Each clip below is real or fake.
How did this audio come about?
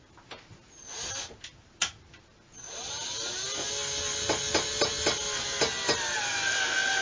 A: real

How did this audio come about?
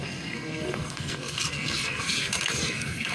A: fake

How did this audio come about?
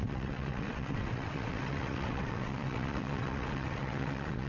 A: fake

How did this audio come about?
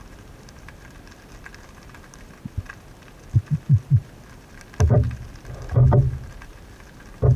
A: fake